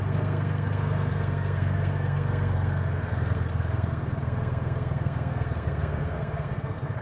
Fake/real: fake